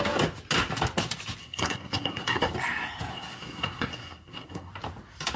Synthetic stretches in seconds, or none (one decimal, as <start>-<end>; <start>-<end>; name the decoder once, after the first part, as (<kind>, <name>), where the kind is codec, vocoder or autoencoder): 1.4-2.5 (codec, SNAC); 3.1-4.7